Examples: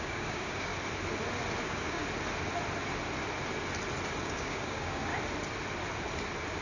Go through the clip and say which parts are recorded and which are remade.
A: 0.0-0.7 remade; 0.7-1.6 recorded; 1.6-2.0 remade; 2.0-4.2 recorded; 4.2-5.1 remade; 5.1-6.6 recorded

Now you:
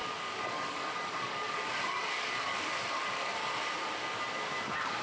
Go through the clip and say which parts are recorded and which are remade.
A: 0.0-3.4 remade; 3.4-4.3 recorded; 4.3-5.0 remade

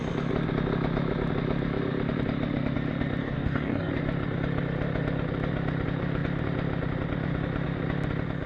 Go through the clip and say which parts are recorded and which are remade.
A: 0.0-3.2 recorded; 3.2-3.9 remade; 3.9-8.5 recorded

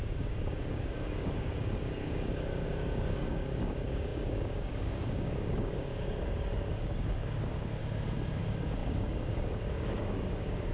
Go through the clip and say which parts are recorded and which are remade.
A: 0.0-7.8 remade; 7.8-8.4 recorded; 8.4-10.7 remade

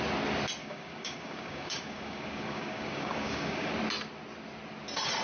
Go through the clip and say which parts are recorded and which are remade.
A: 0.0-0.6 recorded; 0.6-3.7 remade; 3.7-5.2 recorded

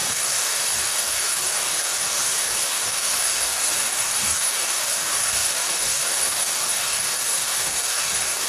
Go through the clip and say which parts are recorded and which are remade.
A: 0.0-8.5 remade

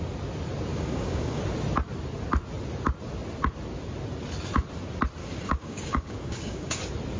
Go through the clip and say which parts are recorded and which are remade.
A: 0.0-0.7 recorded; 0.7-1.4 remade; 1.4-5.2 recorded; 5.2-6.8 remade; 6.8-7.2 recorded

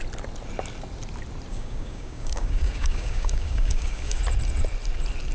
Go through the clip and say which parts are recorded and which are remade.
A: 0.0-1.5 recorded; 1.5-4.2 remade; 4.2-5.3 recorded